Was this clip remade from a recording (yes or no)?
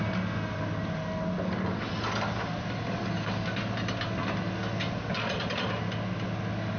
no